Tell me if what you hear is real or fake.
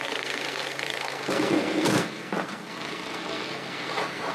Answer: fake